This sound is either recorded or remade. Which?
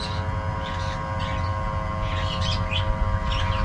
recorded